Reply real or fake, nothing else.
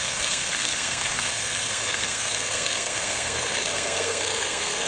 fake